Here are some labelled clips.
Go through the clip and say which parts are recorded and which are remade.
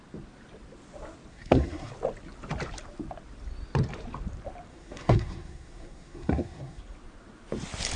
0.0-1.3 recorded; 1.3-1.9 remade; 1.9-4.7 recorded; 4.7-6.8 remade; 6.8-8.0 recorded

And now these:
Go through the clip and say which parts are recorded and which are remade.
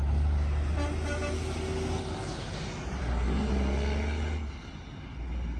0.0-3.0 recorded; 3.0-3.5 remade; 3.5-5.6 recorded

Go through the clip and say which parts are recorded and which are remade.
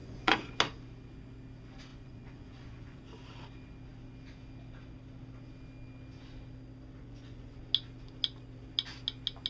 0.0-0.6 remade; 0.6-1.9 recorded; 1.9-3.0 remade; 3.0-7.0 recorded; 7.0-7.6 remade; 7.6-9.5 recorded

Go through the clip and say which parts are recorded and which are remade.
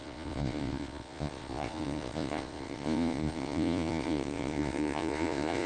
0.0-5.7 remade